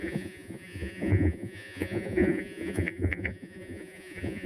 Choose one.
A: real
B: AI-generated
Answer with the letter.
B